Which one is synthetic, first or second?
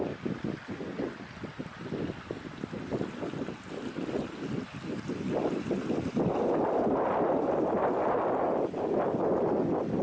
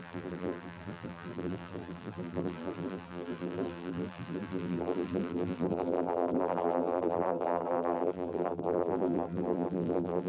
second